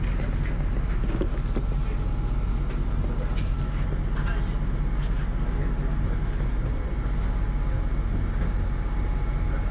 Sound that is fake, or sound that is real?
real